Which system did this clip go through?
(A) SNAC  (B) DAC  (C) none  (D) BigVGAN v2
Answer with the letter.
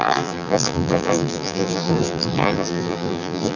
D